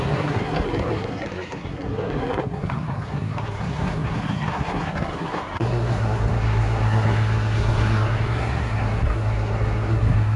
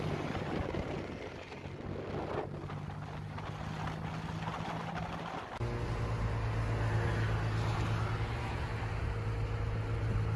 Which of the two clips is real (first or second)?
second